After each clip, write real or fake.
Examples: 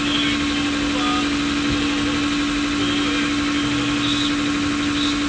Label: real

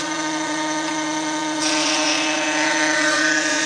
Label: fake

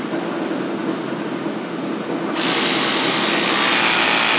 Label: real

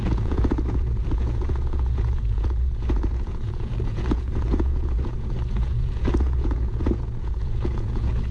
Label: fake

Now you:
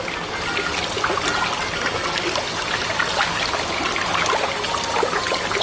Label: real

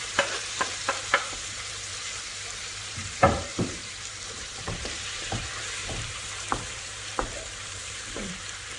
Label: fake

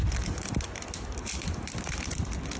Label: real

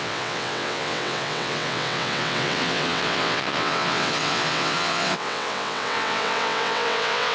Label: fake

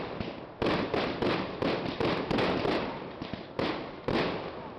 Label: real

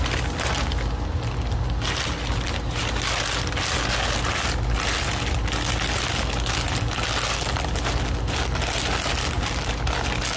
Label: real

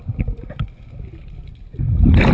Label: real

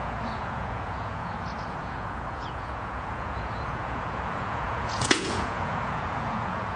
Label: fake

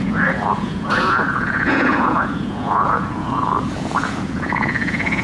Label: fake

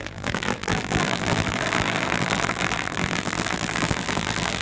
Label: fake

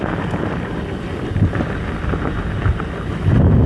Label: real